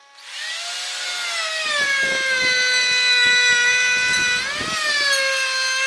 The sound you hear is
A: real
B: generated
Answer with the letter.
A